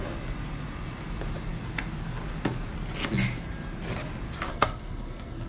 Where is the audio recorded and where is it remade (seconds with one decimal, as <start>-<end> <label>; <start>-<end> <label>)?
0.0-4.5 recorded; 4.5-5.5 remade